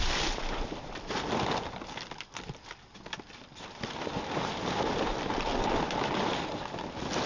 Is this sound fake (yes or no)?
no